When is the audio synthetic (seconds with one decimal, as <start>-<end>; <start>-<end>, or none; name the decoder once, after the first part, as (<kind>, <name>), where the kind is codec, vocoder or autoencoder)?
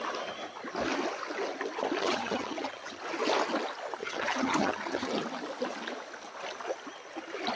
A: 2.0-3.0 (vocoder, HiFi-GAN); 4.0-5.1